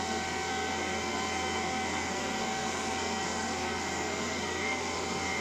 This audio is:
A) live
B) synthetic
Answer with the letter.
B